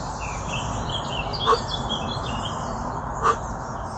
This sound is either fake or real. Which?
real